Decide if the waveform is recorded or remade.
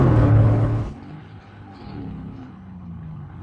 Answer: remade